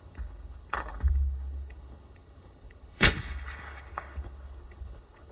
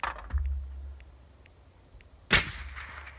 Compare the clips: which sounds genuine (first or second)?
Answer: second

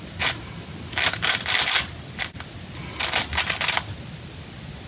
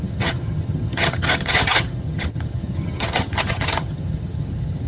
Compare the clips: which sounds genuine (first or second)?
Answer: first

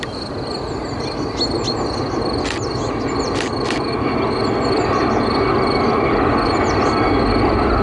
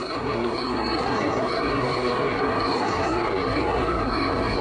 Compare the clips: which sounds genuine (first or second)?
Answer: first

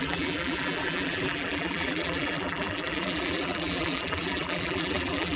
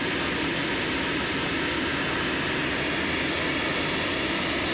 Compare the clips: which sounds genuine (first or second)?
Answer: second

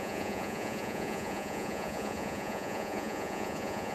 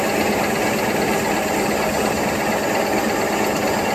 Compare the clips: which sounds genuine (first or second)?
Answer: second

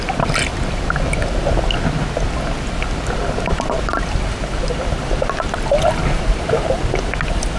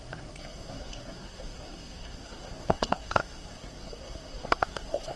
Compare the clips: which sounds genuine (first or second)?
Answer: first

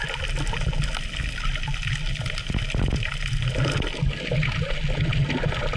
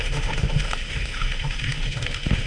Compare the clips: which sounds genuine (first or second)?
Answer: first